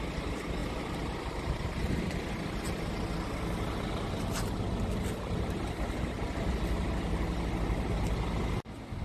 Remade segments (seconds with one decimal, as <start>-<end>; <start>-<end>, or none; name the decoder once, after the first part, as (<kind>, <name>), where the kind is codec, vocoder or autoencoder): none